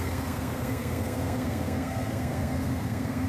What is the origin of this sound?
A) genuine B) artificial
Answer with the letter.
B